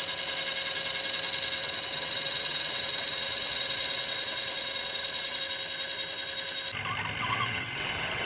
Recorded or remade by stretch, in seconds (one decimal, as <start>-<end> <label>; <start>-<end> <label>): 0.0-1.6 recorded; 1.6-5.4 remade; 5.4-7.2 recorded; 7.2-8.3 remade